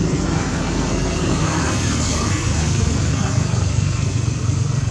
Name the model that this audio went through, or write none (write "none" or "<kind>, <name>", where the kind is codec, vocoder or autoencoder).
codec, SNAC